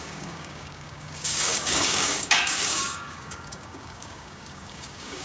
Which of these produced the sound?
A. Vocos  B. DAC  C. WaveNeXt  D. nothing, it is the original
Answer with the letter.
B